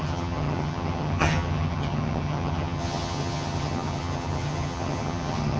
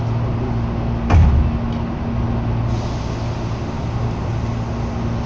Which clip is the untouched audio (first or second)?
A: second